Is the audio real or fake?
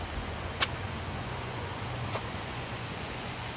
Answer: fake